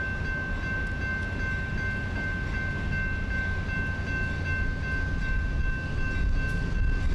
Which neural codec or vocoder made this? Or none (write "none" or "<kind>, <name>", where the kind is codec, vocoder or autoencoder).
none